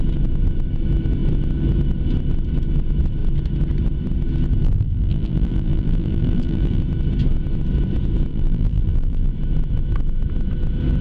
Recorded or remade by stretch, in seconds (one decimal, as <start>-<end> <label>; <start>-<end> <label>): 0.0-4.6 recorded; 4.6-6.8 remade; 6.8-8.3 recorded; 8.3-9.3 remade; 9.3-11.0 recorded